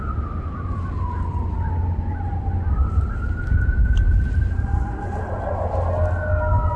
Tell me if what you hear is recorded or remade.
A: recorded